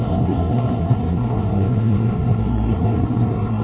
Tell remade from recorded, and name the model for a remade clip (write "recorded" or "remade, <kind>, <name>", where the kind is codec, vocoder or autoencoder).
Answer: remade, codec, SNAC